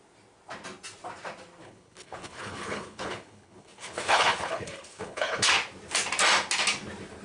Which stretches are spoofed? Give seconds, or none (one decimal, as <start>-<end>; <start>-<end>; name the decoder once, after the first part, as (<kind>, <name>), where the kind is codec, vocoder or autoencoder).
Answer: 1.6-5.5 (codec, HILCodec)